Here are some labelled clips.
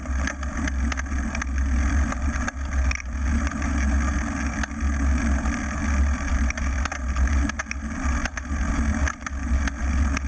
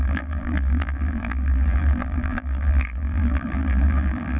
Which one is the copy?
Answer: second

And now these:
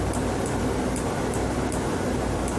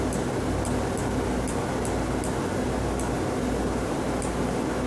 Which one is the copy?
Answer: first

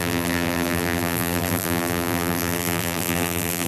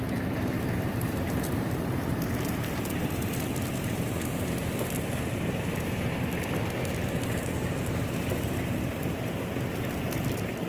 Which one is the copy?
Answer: first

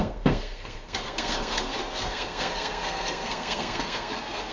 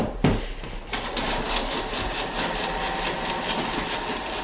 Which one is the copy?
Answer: first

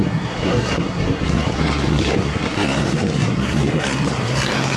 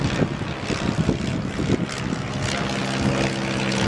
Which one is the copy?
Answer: first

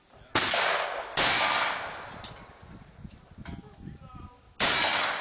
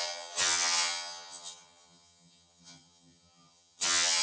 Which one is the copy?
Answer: second